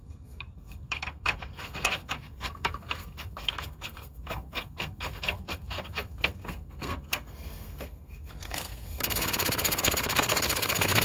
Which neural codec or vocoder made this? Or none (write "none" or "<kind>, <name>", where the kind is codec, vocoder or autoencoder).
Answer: codec, SNAC